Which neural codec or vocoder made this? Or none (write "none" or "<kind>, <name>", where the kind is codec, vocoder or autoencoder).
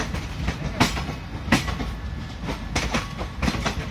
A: none